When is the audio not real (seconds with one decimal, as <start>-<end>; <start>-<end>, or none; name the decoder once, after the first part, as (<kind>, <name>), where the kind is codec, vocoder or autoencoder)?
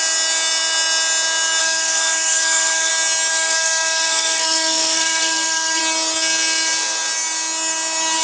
1.6-2.9 (codec, SNAC); 3.3-5.8